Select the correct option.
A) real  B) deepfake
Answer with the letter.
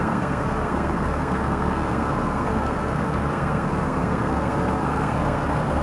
B